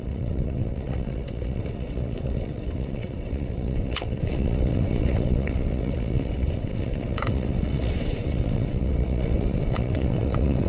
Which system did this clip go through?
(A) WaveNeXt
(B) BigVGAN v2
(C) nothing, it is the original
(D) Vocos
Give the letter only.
A